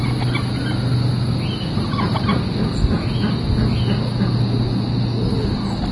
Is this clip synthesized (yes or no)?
no